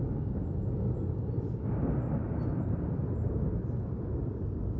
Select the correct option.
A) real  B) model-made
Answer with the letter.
A